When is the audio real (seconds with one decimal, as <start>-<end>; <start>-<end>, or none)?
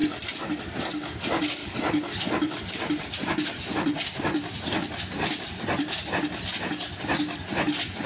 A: 0.0-1.6; 6.1-8.1